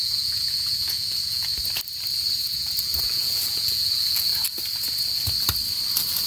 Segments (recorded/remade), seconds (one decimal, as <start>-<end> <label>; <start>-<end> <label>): 0.0-1.5 remade; 1.5-2.4 recorded; 2.4-4.3 remade; 4.3-6.3 recorded